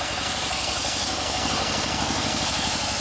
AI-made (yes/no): yes